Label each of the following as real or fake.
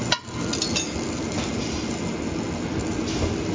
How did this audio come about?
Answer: real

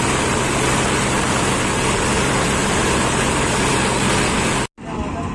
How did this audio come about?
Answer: real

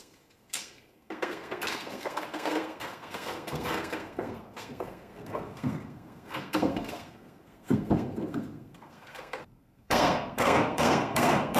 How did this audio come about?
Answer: fake